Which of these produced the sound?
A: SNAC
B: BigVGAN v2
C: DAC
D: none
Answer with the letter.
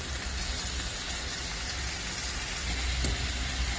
D